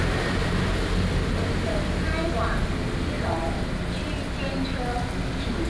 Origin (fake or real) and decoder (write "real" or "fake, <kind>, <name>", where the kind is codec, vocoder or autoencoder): real